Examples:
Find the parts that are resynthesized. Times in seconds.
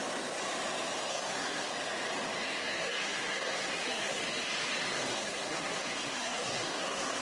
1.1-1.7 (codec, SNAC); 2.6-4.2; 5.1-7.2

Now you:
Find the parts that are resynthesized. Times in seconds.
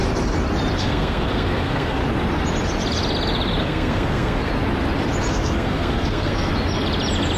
0.8-2.0 (codec, SNAC); 3.6-4.5; 5.3-6.5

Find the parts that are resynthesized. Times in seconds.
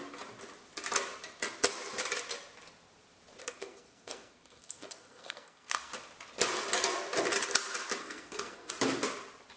3.4-5.9 (codec, SNAC); 8.0-8.7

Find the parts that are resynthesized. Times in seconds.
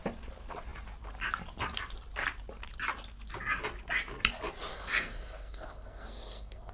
4.7-6.7 (codec, SNAC)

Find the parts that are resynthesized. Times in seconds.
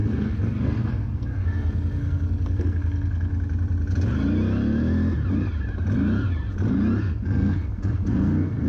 0.0-3.3 (codec, SNAC); 7.0-8.7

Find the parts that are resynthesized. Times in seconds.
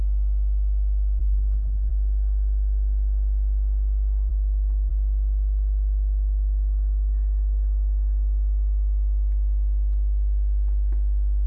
1.2-1.9 (codec, SNAC)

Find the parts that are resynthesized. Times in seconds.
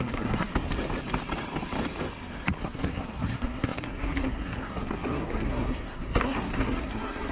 0.0-0.5 (codec, SNAC); 2.6-7.3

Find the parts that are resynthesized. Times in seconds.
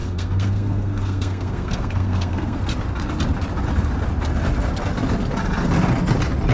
0.0-2.6 (codec, SNAC)